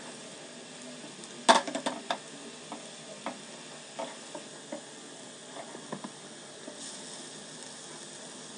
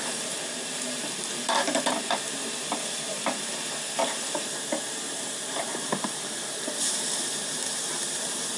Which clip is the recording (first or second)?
first